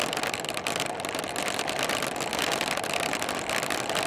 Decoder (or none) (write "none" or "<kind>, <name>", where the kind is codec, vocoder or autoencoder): none